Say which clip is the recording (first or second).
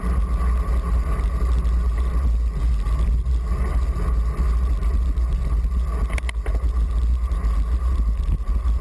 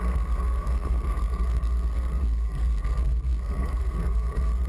first